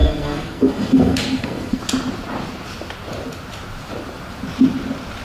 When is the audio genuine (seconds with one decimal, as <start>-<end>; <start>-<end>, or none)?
1.8-5.2